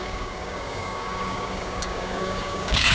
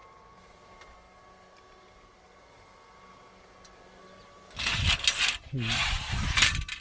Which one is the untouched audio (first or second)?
second